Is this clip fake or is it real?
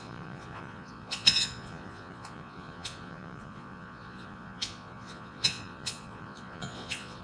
fake